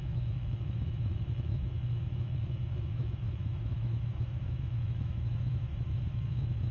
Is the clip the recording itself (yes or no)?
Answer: no